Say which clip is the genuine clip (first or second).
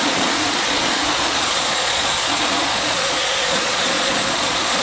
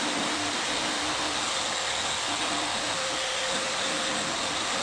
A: second